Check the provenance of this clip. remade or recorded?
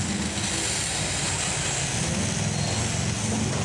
recorded